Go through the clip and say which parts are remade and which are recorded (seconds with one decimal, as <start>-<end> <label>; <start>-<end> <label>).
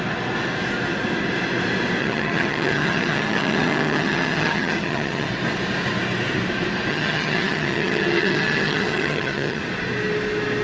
0.0-2.0 recorded; 2.0-5.3 remade; 5.3-6.9 recorded; 6.9-9.6 remade; 9.6-10.6 recorded